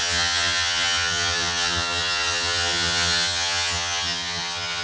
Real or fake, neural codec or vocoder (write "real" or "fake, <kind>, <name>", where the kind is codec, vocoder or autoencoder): fake, vocoder, HiFi-GAN